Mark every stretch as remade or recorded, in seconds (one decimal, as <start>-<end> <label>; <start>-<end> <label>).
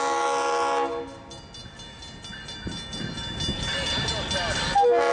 0.0-5.1 recorded